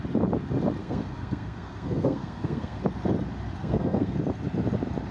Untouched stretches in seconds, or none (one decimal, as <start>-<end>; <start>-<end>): 0.0-0.8; 2.8-3.6; 4.2-5.1

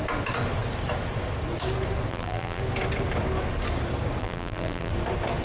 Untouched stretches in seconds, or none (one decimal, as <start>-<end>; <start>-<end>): 0.0-2.1; 2.6-4.2; 4.9-5.4

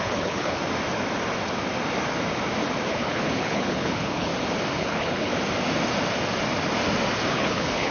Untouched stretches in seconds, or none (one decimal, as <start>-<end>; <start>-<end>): 0.6-2.9; 4.3-4.8; 5.3-7.3

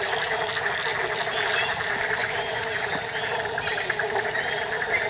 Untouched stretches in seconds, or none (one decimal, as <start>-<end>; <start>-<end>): 0.0-2.2; 3.0-5.1

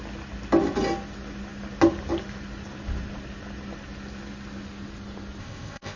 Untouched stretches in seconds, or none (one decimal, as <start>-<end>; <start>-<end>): 0.0-5.4